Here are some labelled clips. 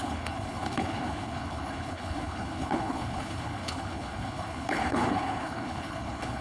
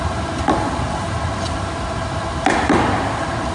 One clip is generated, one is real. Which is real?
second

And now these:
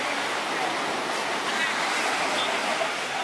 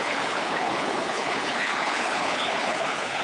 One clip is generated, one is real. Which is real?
first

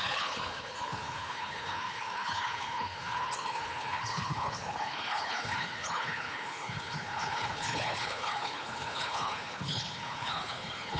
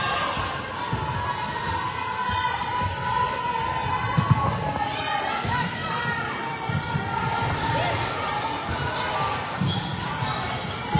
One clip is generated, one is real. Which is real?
second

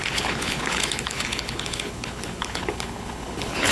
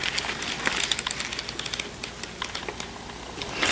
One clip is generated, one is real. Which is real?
second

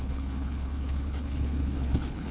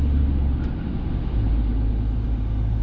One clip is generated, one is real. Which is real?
second